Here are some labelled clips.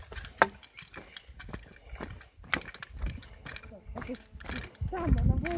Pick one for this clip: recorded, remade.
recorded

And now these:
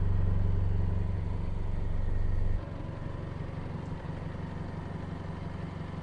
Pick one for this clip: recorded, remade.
recorded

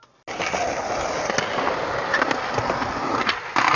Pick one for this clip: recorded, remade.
recorded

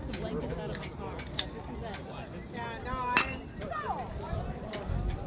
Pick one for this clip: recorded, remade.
recorded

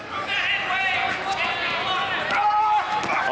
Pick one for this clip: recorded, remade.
recorded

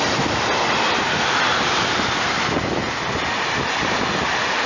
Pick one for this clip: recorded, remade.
recorded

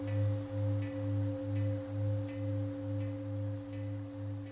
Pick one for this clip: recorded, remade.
recorded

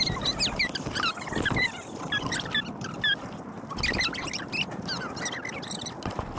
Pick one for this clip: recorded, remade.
recorded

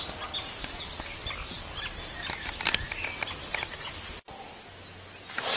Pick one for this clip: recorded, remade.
recorded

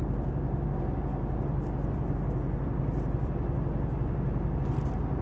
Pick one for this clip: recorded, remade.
recorded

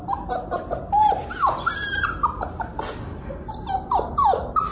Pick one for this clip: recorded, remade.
recorded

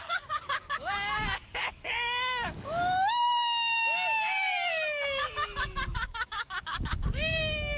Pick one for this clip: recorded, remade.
remade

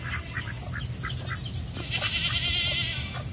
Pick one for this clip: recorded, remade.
recorded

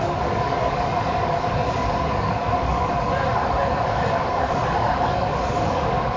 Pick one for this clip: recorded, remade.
remade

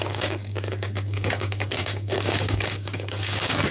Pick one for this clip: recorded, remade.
remade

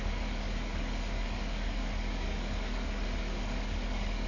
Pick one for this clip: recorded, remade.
remade